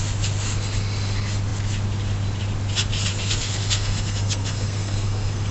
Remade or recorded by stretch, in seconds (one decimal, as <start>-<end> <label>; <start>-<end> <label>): 0.0-3.1 recorded; 3.1-5.5 remade